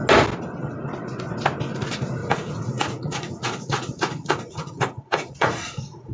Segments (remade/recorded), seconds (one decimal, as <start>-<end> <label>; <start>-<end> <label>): 0.0-2.2 recorded; 2.2-6.1 remade